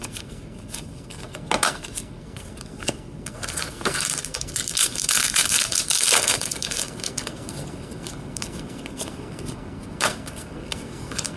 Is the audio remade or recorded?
remade